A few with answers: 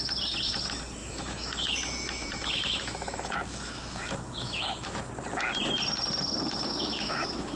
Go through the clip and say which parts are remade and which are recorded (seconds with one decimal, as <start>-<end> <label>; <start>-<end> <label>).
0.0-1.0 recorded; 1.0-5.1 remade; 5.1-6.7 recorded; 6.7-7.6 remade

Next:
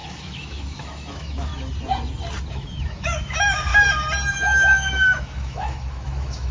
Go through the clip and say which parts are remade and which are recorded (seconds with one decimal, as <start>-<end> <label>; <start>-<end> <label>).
0.0-1.5 remade; 1.5-2.5 recorded; 2.5-3.7 remade; 3.7-4.3 recorded; 4.3-6.5 remade

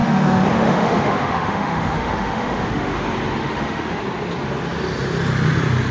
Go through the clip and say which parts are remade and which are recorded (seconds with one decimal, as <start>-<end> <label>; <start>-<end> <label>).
0.0-3.0 remade; 3.0-3.4 recorded; 3.4-4.0 remade; 4.0-5.9 recorded